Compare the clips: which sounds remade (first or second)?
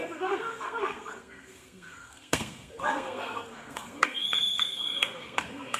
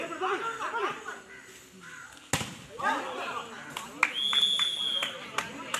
first